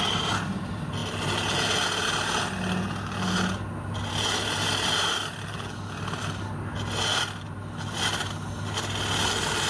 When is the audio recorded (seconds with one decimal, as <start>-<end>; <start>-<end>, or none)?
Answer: 0.0-9.7